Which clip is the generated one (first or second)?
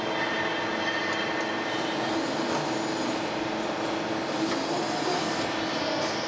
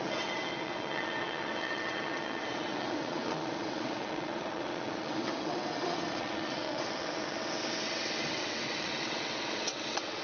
second